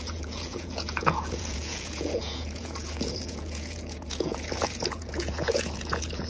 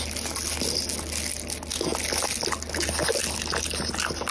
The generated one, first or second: first